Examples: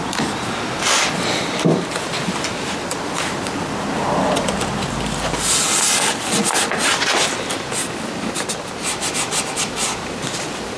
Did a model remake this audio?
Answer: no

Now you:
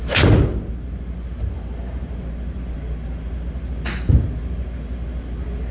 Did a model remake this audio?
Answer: no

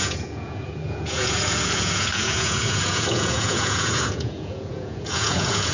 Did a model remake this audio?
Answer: yes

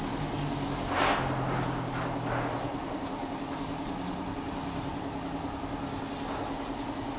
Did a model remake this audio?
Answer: no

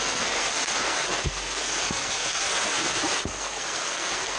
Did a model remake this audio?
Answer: yes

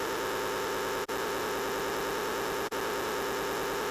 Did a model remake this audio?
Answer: no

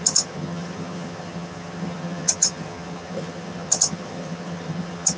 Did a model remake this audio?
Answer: yes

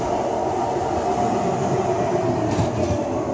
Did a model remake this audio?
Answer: no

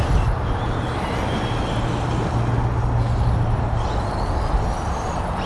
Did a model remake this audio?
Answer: no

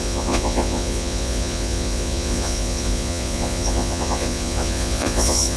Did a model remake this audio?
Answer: yes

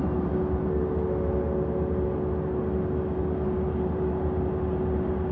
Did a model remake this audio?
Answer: no